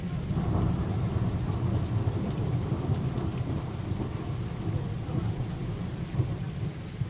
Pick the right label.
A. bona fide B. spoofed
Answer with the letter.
A